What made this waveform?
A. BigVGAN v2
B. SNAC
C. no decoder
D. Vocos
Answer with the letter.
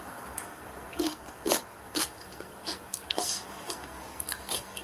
B